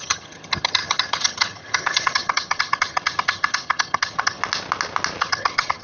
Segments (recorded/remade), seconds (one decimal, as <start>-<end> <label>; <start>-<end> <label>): 0.0-4.4 remade; 4.4-5.2 recorded; 5.2-5.8 remade